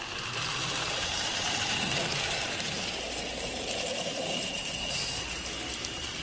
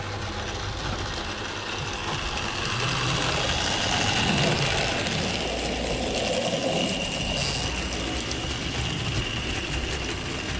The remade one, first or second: first